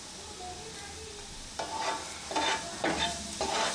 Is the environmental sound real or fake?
real